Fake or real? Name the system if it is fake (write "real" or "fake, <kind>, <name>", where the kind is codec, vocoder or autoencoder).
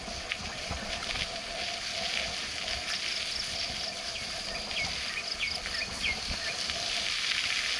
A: real